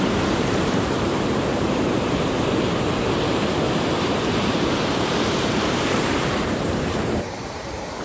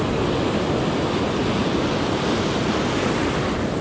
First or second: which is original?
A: second